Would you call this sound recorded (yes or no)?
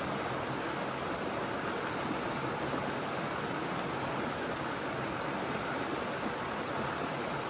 yes